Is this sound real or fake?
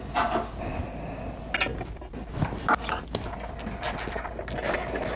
real